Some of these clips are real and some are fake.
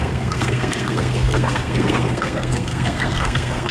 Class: fake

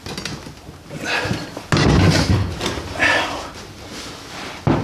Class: real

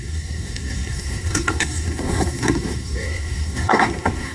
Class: fake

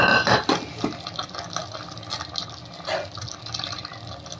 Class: real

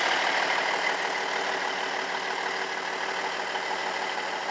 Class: real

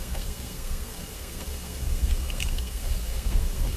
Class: fake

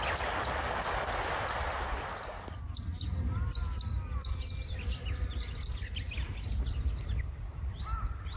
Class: real